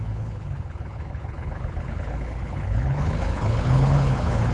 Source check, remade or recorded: remade